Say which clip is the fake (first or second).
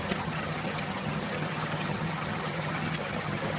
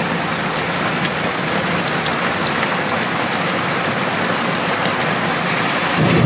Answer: first